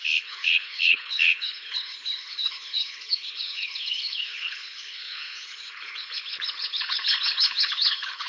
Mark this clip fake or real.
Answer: fake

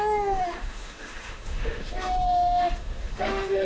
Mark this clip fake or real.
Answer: fake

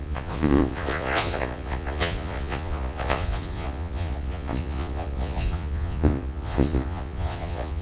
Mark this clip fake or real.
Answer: fake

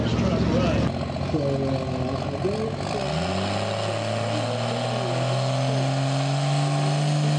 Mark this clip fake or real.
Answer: real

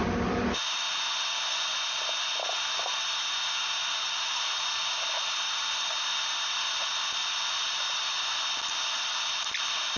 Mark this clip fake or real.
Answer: real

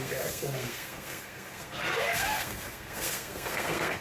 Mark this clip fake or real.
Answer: fake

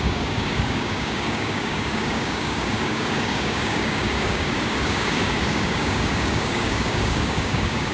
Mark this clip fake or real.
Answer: fake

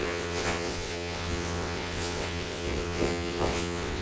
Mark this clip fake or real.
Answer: fake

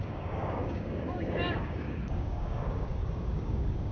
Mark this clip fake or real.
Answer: fake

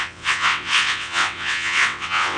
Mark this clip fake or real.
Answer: fake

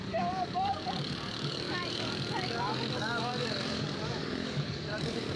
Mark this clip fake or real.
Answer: fake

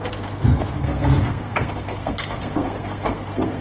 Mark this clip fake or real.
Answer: fake